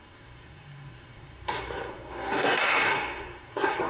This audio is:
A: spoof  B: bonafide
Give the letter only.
A